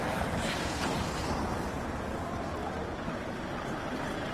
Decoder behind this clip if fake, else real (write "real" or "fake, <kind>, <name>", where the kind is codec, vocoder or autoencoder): fake, vocoder, BigVGAN v2